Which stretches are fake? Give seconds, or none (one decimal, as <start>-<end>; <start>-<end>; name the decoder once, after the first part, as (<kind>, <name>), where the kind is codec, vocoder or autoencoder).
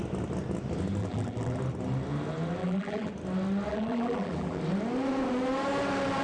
1.0-1.6 (vocoder, BigVGAN v2); 2.6-3.1; 3.7-4.6